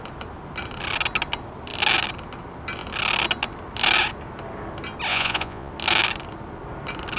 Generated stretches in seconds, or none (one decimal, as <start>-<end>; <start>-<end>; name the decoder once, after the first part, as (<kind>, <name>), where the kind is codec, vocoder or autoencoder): 5.1-5.7 (vocoder, Vocos)